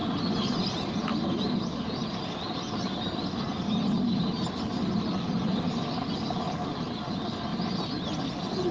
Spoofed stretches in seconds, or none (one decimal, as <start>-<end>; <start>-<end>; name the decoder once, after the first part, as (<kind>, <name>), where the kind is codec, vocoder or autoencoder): none